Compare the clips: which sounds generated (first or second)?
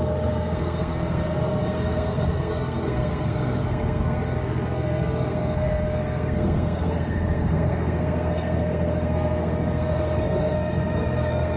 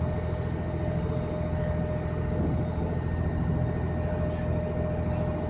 first